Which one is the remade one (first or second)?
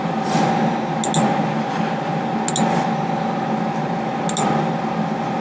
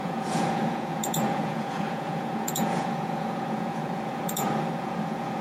second